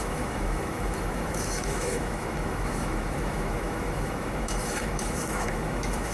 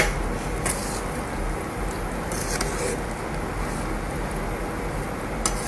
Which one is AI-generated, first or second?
first